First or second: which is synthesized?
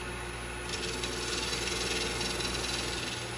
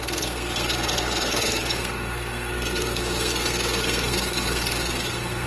second